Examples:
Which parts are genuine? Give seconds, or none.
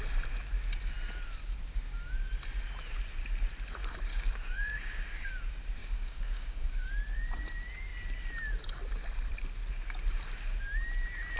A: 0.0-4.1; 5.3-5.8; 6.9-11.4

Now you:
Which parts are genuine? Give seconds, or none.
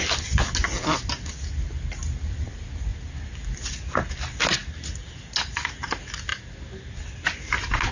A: 0.0-7.9